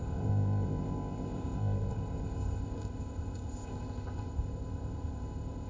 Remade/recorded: remade